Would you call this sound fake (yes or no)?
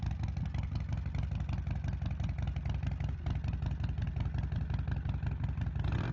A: no